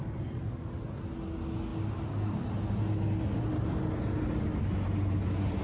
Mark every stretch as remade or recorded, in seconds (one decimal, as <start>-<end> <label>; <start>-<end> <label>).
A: 0.0-5.6 recorded